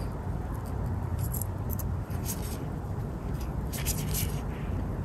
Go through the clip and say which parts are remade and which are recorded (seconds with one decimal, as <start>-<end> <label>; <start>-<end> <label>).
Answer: 0.0-1.1 recorded; 1.1-4.1 remade; 4.1-5.0 recorded